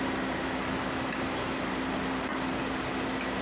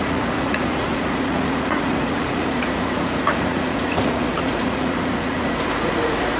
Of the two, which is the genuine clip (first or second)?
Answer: first